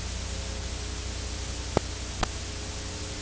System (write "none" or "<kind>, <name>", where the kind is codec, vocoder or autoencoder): none